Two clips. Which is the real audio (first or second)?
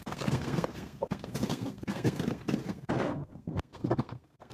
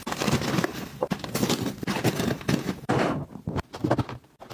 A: second